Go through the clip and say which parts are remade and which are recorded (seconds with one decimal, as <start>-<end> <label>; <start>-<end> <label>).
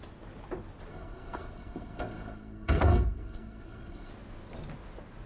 0.0-0.9 recorded; 0.9-4.1 remade; 4.1-5.3 recorded